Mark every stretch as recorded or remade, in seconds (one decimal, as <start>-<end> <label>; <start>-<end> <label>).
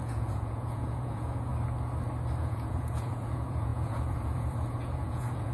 0.0-1.5 remade; 1.5-2.4 recorded; 2.4-5.5 remade